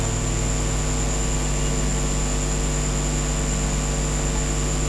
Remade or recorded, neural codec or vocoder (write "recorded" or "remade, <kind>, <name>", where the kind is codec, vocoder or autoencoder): recorded